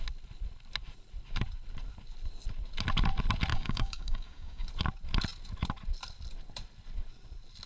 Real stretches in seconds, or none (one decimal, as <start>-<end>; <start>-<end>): 0.0-3.5; 4.7-7.7

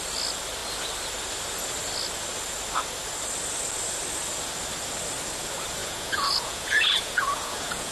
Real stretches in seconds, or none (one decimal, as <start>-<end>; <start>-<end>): 0.0-5.8

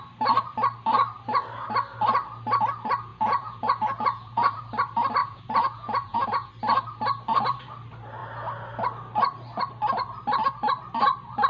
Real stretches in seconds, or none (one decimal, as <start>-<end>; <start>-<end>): 0.0-3.1; 4.6-5.2; 6.5-11.5

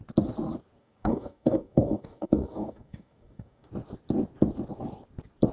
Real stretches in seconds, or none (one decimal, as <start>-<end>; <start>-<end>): 0.0-0.8; 3.7-5.5

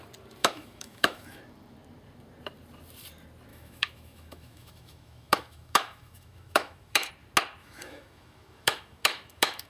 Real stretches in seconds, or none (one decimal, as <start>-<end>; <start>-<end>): 0.0-0.4; 1.4-3.5; 7.1-7.6

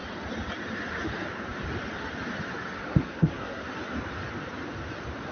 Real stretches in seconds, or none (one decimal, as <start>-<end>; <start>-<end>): 0.0-3.0; 3.7-5.3